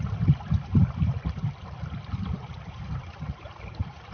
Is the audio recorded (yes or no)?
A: no